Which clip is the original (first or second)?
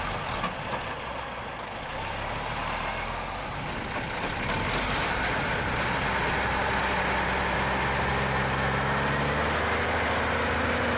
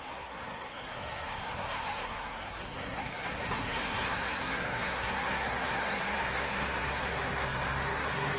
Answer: first